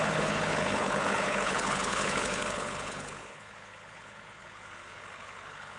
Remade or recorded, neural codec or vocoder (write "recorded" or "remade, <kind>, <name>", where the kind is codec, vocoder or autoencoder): remade, codec, HILCodec